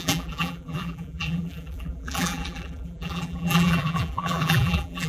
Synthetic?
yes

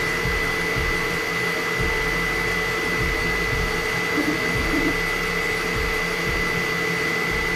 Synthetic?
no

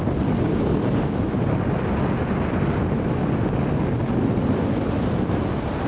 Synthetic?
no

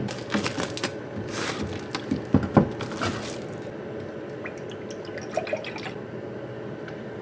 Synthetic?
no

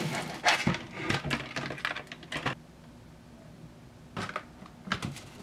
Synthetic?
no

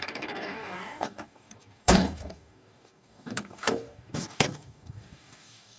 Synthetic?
yes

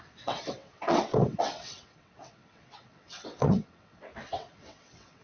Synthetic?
yes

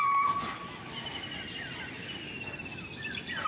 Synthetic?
no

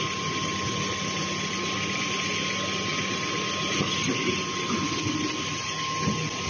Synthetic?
no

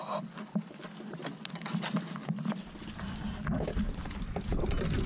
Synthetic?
no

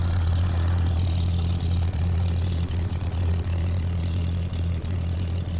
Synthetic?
yes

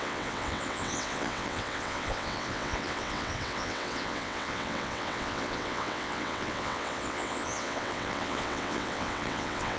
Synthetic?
yes